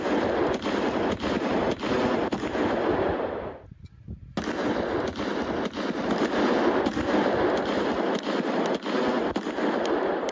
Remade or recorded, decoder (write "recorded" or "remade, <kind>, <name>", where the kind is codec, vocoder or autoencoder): recorded